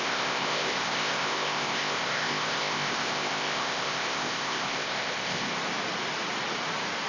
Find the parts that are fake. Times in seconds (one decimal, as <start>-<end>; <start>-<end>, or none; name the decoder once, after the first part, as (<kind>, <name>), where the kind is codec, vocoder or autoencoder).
0.0-5.5 (codec, ZipCodec)